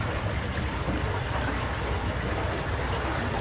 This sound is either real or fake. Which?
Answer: real